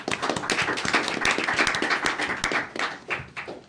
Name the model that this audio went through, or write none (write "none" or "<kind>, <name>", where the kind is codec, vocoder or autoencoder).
none